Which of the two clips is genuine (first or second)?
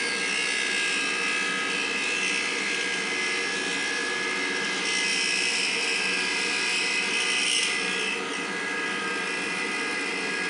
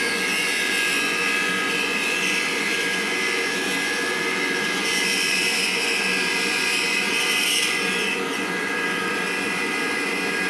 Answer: first